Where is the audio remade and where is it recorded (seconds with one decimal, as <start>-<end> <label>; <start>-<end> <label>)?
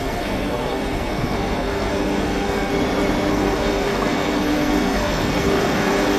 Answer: 0.0-2.7 remade; 2.7-3.3 recorded; 3.3-6.2 remade